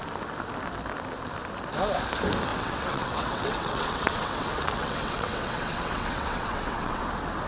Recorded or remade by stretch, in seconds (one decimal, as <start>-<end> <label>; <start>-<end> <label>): 0.0-2.5 recorded; 2.5-7.0 remade; 7.0-7.5 recorded